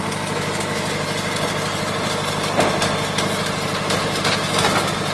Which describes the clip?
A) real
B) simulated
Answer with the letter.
A